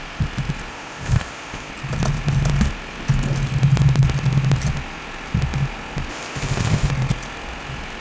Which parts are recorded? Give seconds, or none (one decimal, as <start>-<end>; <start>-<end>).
0.0-0.7; 1.7-6.1; 6.9-8.0